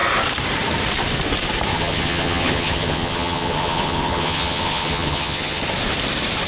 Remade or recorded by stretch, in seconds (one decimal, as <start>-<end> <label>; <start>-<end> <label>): 0.0-1.7 recorded; 1.7-5.6 remade; 5.6-6.5 recorded